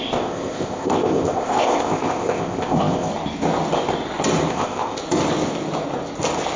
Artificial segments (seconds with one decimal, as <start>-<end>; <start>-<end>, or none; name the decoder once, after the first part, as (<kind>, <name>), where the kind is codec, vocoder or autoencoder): 0.0-3.1 (codec, ZipCodec); 4.5-5.0